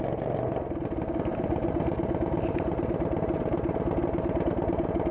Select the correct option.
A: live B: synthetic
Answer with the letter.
A